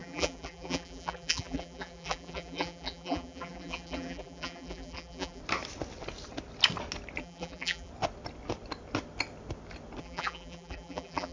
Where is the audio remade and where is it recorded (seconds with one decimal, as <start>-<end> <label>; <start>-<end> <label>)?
0.0-5.4 remade; 5.4-7.2 recorded; 7.2-7.9 remade; 7.9-10.0 recorded; 10.0-11.3 remade